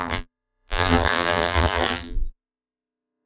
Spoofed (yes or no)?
yes